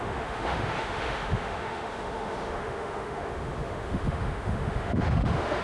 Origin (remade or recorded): remade